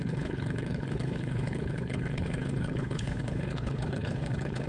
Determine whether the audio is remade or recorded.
remade